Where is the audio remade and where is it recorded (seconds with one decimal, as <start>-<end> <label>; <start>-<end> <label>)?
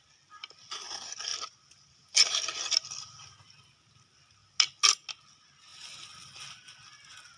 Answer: 0.0-1.3 recorded; 1.3-3.9 remade; 3.9-7.4 recorded